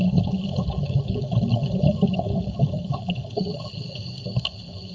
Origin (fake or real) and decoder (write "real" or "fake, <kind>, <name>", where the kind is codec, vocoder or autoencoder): fake, codec, HILCodec